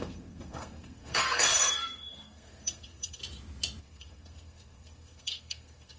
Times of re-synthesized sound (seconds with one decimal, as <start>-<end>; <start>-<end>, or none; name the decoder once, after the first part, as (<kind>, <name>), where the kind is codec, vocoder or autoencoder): 0.0-3.2 (codec, SNAC); 3.8-6.0